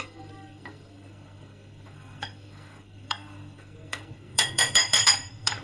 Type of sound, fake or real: fake